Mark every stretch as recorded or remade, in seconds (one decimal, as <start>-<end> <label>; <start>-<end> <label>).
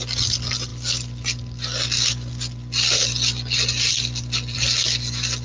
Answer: 0.0-5.4 recorded